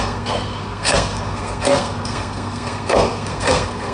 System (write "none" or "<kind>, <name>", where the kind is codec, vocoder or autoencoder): codec, SNAC